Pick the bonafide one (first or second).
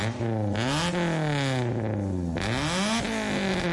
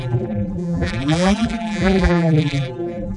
first